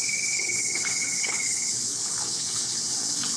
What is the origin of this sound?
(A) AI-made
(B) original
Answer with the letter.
A